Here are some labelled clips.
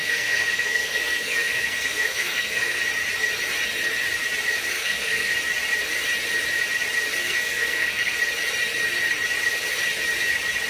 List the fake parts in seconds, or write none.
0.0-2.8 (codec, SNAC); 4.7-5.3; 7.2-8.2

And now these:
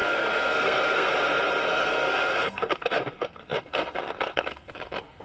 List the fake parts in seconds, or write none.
0.0-1.1 (codec, SNAC); 1.6-4.7

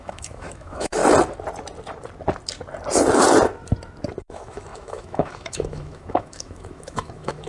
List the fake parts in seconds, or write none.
0.0-1.0 (autoencoder, DAC-VAE); 4.2-7.5

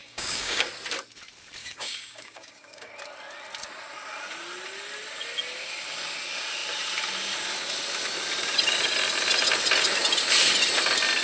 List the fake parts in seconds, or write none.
0.0-0.7 (codec, DAC); 1.6-2.9

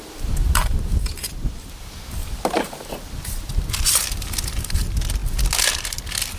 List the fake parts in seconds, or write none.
0.0-1.8 (vocoder, BigVGAN v2); 2.2-2.8